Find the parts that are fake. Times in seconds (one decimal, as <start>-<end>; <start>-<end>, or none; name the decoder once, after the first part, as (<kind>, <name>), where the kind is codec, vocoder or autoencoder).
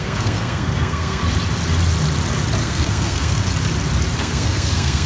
0.0-1.2 (codec, SNAC); 2.6-3.5; 4.2-5.1